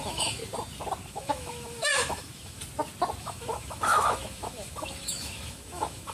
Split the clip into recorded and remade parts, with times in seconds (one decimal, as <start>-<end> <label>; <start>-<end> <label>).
0.0-0.4 remade; 0.4-1.1 recorded; 1.1-2.6 remade; 2.6-3.2 recorded; 3.2-6.1 remade